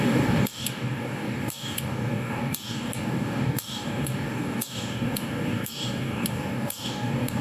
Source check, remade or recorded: remade